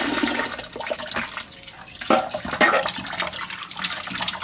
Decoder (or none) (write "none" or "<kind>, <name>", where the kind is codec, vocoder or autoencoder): none